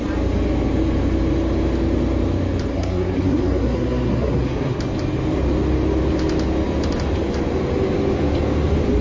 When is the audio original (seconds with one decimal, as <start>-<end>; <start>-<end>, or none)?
0.0-2.7; 4.8-9.0